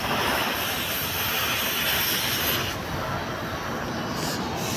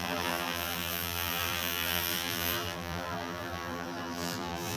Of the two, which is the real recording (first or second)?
first